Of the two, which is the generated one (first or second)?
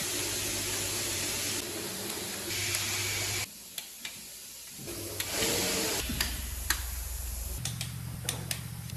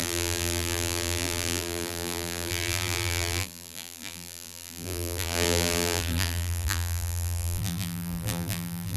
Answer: second